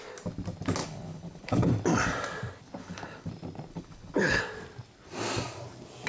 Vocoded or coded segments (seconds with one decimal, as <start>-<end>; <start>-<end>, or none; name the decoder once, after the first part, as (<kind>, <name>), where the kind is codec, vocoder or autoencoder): 0.8-1.7 (codec, HILCodec); 2.8-3.3; 3.7-4.4